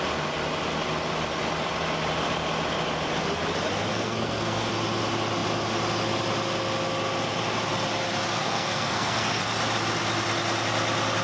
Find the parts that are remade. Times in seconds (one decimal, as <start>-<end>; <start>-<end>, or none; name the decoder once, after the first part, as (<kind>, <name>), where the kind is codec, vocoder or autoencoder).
3.9-4.7 (codec, SNAC); 8.4-9.4